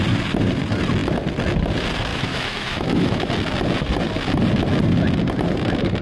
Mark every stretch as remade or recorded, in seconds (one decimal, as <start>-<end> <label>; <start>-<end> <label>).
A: 0.0-2.1 recorded; 2.1-3.3 remade; 3.3-6.0 recorded